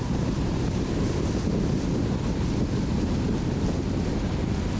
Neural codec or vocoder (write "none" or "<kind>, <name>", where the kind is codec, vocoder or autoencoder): none